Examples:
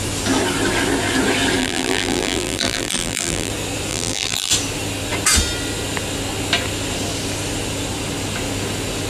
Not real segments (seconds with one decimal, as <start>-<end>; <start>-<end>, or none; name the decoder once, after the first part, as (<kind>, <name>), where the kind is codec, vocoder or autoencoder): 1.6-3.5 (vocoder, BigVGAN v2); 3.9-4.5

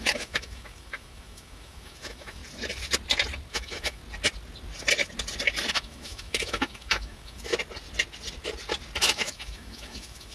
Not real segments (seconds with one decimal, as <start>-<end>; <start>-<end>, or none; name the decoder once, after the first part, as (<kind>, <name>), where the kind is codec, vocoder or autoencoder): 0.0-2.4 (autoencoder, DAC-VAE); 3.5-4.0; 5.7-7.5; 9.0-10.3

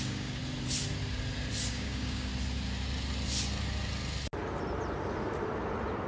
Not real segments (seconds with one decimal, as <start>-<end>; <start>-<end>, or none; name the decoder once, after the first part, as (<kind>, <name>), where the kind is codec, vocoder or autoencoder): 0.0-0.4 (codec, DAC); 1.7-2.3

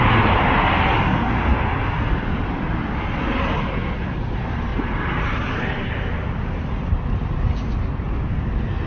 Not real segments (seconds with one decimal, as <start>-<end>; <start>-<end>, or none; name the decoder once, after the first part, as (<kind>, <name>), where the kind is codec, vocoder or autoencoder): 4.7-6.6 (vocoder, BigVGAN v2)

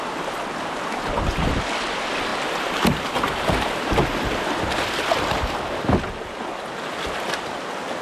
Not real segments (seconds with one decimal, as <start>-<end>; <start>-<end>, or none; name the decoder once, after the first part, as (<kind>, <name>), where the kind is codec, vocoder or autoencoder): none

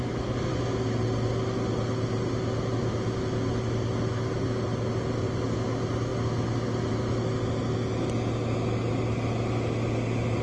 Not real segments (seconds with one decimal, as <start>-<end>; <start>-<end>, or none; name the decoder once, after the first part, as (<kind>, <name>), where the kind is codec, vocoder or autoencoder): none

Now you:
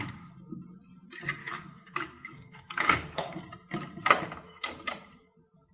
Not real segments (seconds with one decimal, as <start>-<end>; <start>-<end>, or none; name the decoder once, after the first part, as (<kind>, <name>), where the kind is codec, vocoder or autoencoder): 1.4-3.4 (codec, DAC)

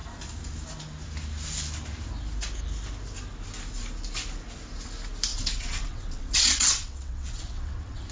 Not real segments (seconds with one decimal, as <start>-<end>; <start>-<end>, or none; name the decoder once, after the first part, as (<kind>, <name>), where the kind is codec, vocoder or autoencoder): 5.3-8.1 (vocoder, WaveNeXt)